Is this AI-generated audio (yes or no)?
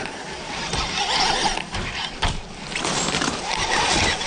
no